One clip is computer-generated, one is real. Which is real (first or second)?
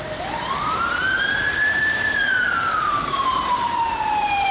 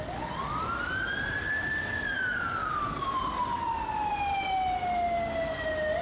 second